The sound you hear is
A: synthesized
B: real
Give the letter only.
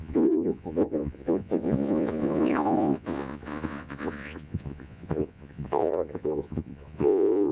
A